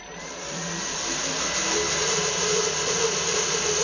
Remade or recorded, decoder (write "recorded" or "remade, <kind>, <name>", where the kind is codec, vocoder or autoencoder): remade, vocoder, BigVGAN v2